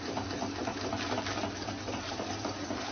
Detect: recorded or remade recorded